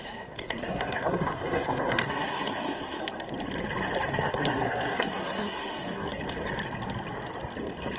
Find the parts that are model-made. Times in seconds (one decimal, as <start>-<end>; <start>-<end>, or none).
0.0-3.0; 4.1-6.2